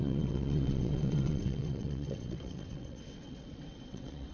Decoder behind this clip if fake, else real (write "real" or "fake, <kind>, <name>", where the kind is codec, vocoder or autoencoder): fake, vocoder, WaveNeXt